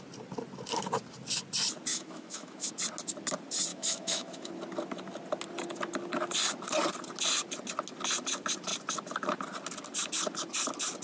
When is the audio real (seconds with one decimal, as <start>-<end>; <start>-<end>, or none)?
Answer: 0.0-1.9; 2.7-3.7; 4.5-11.0